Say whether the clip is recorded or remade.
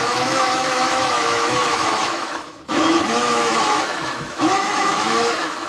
remade